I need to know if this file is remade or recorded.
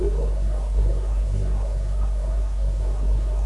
remade